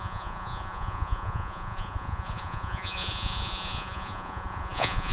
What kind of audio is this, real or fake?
fake